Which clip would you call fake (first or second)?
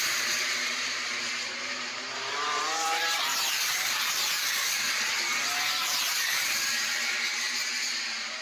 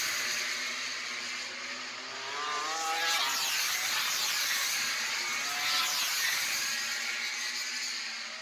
first